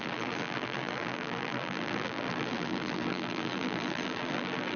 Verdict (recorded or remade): remade